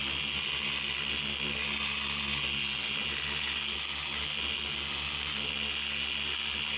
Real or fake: real